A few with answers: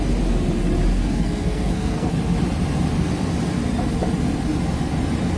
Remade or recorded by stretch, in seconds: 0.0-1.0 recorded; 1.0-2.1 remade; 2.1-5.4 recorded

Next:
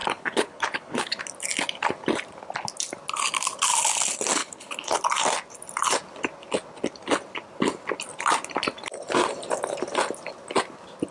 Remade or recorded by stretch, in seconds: 0.0-1.2 remade; 1.2-4.4 recorded; 4.4-5.0 remade; 5.0-11.1 recorded